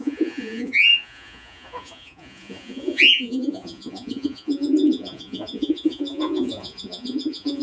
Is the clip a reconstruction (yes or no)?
yes